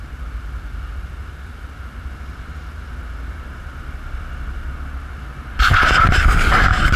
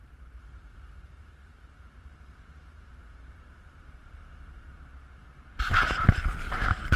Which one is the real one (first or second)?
first